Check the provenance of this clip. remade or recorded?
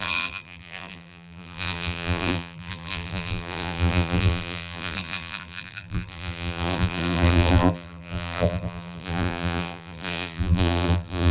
remade